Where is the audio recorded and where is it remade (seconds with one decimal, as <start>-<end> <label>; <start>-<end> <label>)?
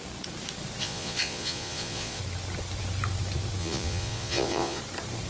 0.0-0.8 recorded; 0.8-2.2 remade; 2.2-3.6 recorded; 3.6-4.8 remade; 4.8-5.3 recorded